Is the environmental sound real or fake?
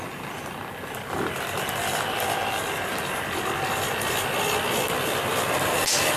real